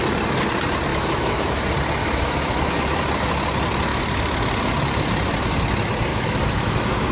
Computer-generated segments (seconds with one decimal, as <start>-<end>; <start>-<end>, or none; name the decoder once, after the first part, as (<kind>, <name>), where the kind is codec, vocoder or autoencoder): 0.9-1.6 (autoencoder, DAC-VAE); 2.0-3.0; 6.1-7.1